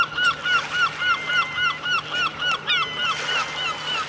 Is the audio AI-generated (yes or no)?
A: no